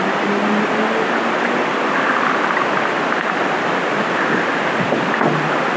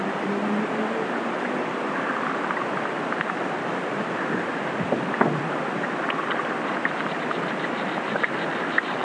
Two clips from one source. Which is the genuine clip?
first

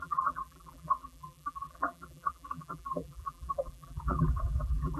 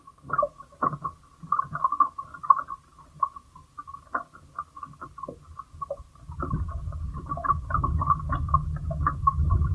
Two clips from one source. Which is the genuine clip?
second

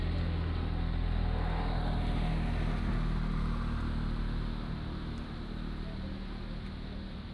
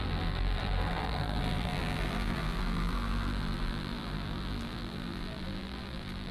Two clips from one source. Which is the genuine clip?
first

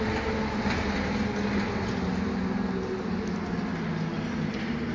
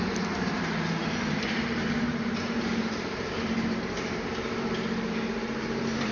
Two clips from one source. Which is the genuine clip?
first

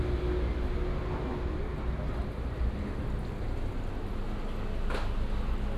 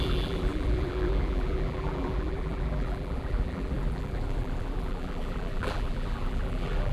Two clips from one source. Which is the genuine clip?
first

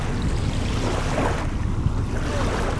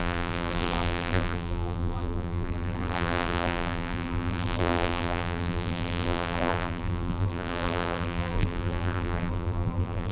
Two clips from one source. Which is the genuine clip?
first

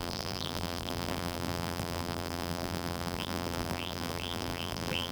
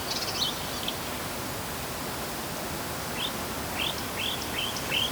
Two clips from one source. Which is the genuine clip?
second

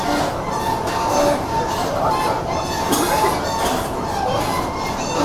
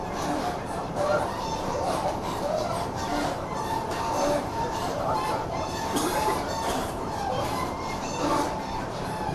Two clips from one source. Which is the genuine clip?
first